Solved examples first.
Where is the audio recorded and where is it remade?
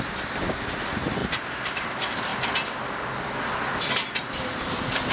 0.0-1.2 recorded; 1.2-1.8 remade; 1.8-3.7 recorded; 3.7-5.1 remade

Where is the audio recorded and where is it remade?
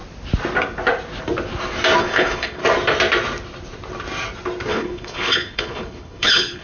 0.0-2.0 recorded; 2.0-2.6 remade; 2.6-4.7 recorded; 4.7-6.6 remade